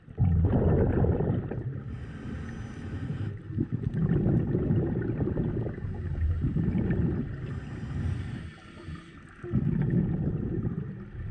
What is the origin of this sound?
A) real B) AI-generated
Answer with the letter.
A